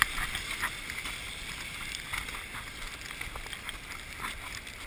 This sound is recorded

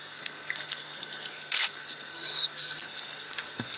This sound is remade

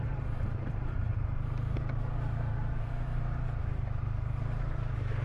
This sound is remade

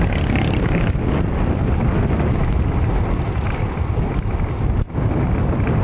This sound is recorded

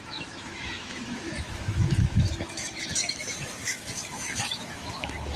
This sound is remade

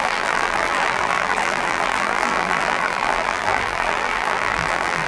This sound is remade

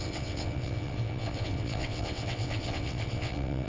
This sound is remade